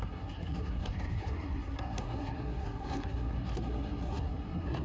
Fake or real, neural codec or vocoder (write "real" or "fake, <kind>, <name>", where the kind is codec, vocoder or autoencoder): fake, codec, SNAC